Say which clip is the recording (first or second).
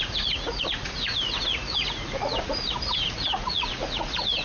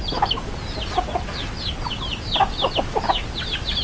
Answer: second